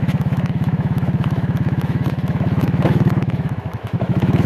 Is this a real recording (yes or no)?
no